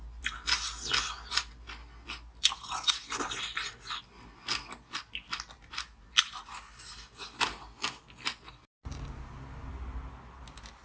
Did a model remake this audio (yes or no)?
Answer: no